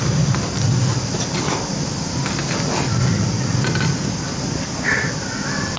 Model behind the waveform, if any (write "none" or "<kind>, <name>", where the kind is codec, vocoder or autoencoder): none